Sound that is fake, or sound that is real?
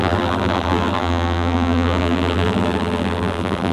fake